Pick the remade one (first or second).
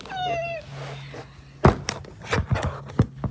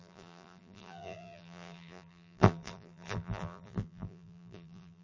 second